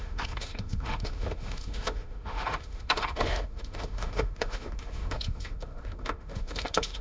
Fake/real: fake